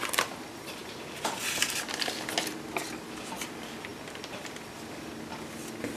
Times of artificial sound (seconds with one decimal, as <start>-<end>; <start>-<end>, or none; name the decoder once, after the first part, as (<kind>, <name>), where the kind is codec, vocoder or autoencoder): none